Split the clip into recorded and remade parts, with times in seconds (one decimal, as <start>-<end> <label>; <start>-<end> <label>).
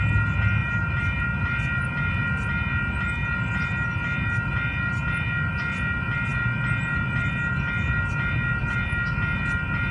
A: 0.0-0.6 recorded; 0.6-1.2 remade; 1.2-9.9 recorded